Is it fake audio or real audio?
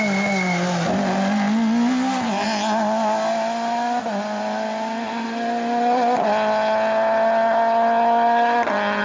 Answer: real